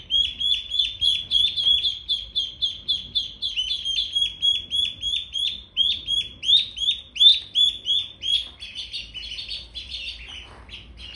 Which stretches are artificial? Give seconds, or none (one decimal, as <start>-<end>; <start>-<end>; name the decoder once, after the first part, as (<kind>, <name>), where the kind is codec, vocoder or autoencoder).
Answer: none